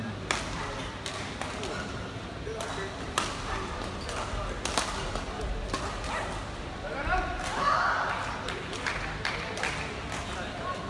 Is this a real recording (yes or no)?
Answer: yes